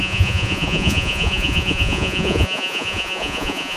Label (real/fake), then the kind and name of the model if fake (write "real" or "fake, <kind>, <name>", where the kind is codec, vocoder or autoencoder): fake, vocoder, Vocos